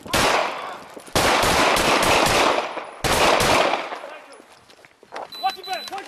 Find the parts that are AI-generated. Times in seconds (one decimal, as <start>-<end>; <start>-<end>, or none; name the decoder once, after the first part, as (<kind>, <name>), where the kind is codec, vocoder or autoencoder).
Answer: none